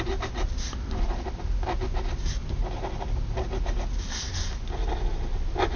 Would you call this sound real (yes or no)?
yes